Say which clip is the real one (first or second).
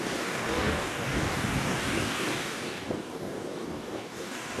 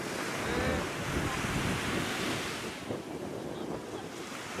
second